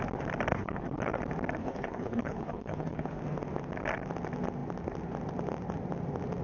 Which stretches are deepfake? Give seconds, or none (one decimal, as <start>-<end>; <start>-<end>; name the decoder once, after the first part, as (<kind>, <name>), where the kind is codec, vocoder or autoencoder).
0.5-1.2 (codec, HILCodec); 1.6-3.2